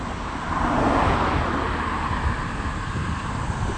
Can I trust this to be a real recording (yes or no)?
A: yes